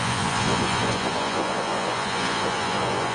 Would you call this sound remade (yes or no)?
yes